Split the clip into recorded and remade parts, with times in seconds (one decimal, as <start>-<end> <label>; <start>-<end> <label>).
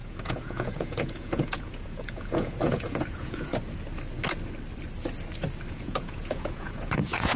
0.0-3.5 remade; 3.5-5.7 recorded; 5.7-7.4 remade